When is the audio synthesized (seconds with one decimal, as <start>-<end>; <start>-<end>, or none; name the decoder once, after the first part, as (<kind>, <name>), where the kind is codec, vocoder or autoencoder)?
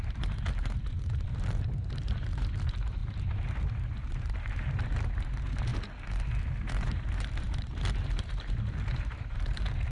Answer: 0.0-5.7 (vocoder, BigVGAN v2); 6.7-9.9